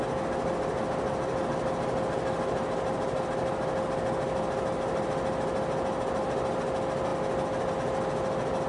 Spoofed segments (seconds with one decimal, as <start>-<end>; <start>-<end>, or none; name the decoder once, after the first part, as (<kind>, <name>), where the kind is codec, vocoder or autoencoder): none